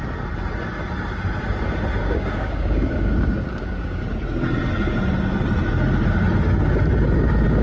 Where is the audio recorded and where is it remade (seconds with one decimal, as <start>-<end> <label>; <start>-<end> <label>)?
0.0-2.0 recorded; 2.0-4.0 remade; 4.0-7.6 recorded